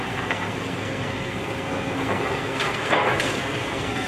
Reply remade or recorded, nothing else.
remade